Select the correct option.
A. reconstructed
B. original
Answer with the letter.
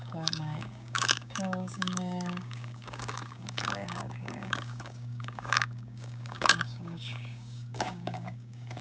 A